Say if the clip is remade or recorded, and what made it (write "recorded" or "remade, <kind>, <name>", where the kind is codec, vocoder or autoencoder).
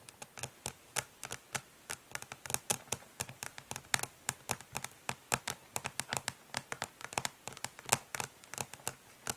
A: recorded